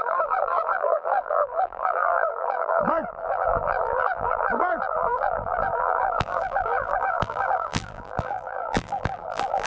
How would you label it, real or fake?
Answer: fake